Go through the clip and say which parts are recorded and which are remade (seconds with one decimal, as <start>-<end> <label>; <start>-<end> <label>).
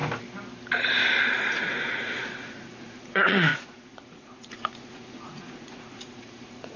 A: 0.0-1.3 recorded; 1.3-6.8 remade